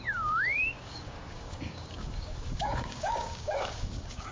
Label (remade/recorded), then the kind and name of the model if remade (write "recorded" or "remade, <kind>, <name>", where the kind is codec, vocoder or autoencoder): remade, codec, DAC